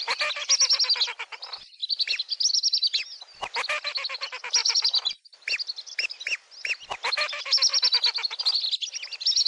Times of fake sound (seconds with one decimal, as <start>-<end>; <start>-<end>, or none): 4.6-5.3